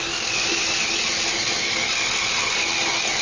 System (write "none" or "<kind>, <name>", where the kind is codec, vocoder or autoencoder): none